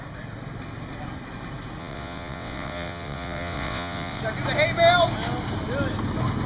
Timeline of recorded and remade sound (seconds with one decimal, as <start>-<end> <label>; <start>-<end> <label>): 0.0-1.8 recorded; 1.8-4.2 remade; 4.2-6.5 recorded